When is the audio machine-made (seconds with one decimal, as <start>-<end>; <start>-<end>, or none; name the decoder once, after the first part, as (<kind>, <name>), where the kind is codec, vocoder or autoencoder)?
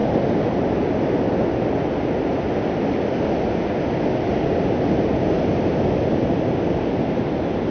none